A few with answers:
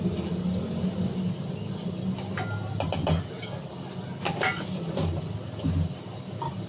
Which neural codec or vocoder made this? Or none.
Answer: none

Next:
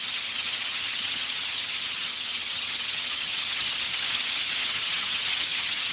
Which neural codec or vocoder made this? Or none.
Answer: vocoder, HiFi-GAN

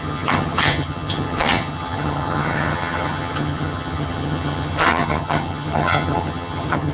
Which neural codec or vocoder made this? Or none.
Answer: vocoder, HiFi-GAN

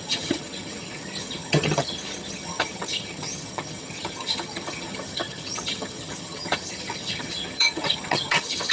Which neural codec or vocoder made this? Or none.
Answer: vocoder, HiFi-GAN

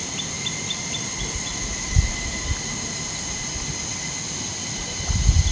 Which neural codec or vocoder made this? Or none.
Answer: none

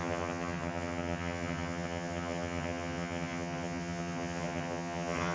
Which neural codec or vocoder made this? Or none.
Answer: vocoder, HiFi-GAN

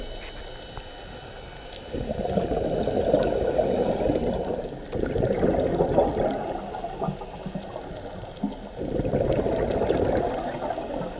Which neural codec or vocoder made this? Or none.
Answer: none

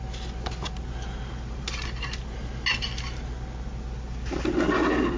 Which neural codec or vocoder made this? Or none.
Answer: none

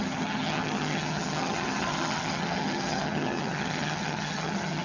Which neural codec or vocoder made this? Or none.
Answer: vocoder, HiFi-GAN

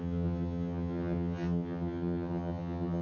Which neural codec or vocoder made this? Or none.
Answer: vocoder, HiFi-GAN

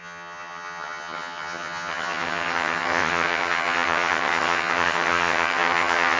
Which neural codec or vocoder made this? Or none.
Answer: vocoder, HiFi-GAN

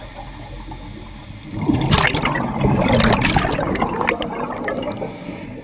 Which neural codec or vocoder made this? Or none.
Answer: none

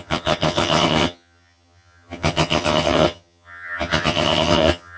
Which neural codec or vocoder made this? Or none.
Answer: vocoder, HiFi-GAN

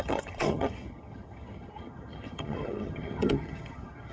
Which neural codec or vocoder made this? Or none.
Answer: vocoder, HiFi-GAN